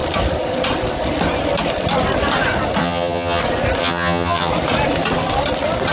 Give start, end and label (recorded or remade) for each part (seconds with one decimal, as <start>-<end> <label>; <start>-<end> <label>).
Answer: 0.0-2.8 recorded; 2.8-3.4 remade; 3.4-3.8 recorded; 3.8-4.5 remade; 4.5-5.9 recorded